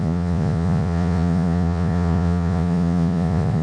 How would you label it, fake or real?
fake